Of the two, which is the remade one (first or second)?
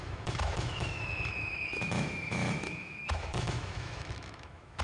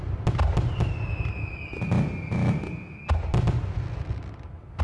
first